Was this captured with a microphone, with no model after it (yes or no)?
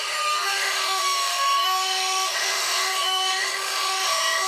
no